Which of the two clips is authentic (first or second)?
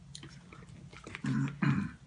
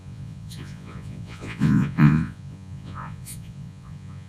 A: first